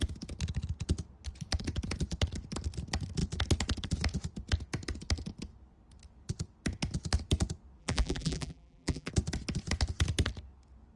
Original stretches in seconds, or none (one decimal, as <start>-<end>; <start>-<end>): 0.0-7.8; 9.1-11.0